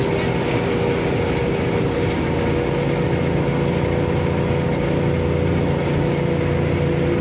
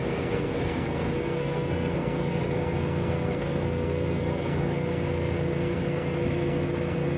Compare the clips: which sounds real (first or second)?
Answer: first